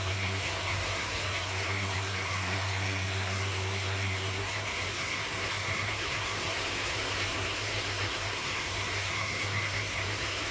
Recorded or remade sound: remade